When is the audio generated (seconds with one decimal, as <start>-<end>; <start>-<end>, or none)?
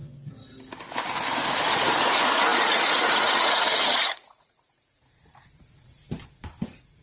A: 1.3-7.0